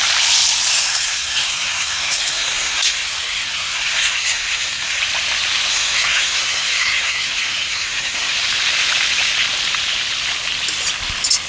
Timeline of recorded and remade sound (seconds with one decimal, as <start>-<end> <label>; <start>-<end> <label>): 0.0-0.7 recorded; 0.7-5.0 remade; 5.0-5.7 recorded; 5.7-8.3 remade; 8.3-11.5 recorded